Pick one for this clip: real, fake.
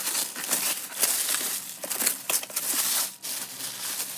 real